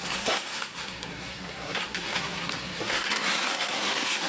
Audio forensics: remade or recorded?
remade